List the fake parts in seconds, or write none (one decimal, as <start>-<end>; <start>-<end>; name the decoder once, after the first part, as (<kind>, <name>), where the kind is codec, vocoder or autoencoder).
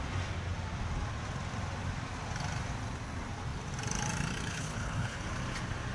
4.5-5.2 (codec, HILCodec)